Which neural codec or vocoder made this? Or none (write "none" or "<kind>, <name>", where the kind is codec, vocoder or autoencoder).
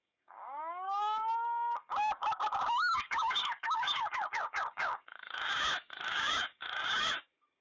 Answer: codec, DAC